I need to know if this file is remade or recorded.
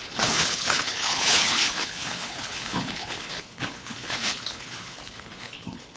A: remade